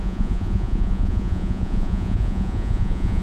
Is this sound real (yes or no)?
no